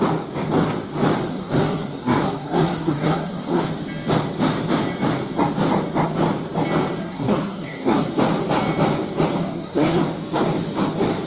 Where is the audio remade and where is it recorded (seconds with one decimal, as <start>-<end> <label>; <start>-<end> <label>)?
0.0-1.3 recorded; 1.3-3.6 remade; 3.6-7.0 recorded; 7.0-8.1 remade; 8.1-9.4 recorded; 9.4-10.0 remade; 10.0-11.3 recorded